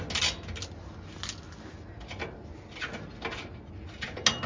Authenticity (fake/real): real